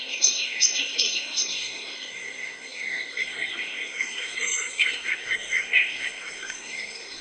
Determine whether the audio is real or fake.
fake